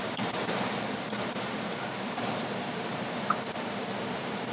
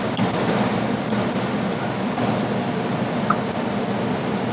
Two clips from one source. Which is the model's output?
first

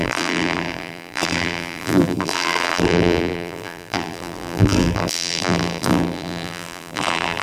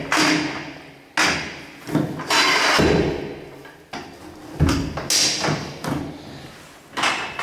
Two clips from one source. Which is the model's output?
first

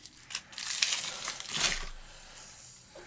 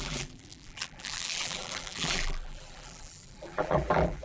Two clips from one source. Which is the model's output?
second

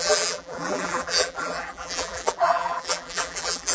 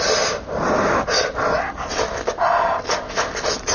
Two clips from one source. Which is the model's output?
first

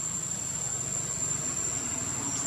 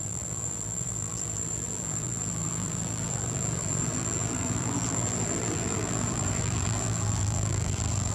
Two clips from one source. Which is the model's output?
second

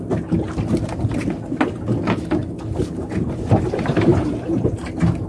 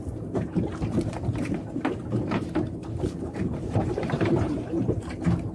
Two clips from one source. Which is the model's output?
second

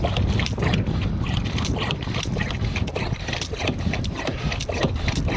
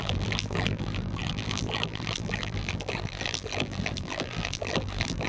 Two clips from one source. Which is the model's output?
second